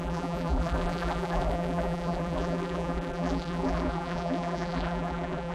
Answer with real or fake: fake